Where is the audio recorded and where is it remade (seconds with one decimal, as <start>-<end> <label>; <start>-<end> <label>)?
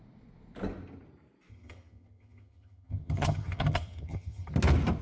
0.0-1.5 recorded; 1.5-4.5 remade; 4.5-5.0 recorded